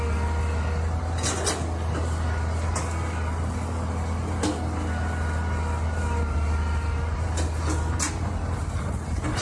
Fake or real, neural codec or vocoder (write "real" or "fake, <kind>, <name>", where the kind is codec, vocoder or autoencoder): real